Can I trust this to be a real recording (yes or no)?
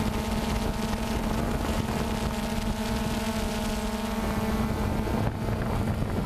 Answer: yes